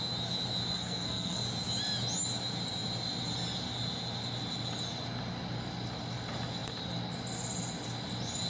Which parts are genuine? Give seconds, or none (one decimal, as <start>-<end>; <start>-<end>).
0.0-0.7; 1.4-8.5